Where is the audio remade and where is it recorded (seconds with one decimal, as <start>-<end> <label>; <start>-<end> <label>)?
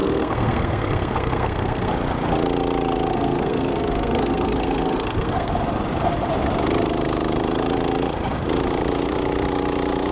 0.0-1.9 remade; 1.9-3.1 recorded; 3.1-5.5 remade; 5.5-10.1 recorded